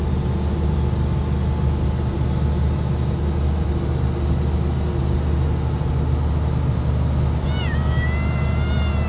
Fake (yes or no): no